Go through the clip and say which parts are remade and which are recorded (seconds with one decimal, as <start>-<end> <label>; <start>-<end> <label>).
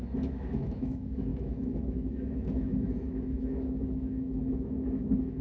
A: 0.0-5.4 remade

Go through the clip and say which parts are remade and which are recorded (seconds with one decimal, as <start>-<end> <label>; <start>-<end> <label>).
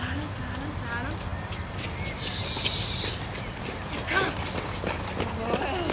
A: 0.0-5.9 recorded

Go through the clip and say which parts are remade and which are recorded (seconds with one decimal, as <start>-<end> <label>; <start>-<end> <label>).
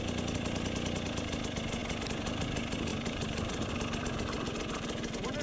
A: 0.0-2.9 recorded; 2.9-3.7 remade; 3.7-5.4 recorded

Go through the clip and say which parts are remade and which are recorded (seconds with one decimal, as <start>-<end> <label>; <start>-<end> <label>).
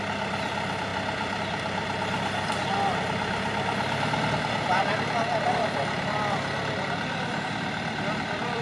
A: 0.0-8.6 remade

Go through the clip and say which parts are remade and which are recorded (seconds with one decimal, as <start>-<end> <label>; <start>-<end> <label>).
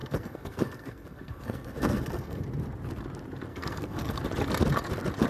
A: 0.0-2.4 remade; 2.4-3.5 recorded; 3.5-4.2 remade; 4.2-5.3 recorded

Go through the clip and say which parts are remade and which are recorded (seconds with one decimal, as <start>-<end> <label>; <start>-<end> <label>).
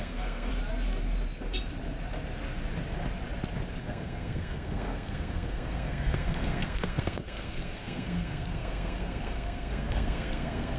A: 0.0-0.5 remade; 0.5-3.8 recorded; 3.8-10.8 remade